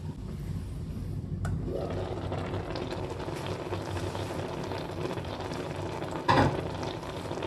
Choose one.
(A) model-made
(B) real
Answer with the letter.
B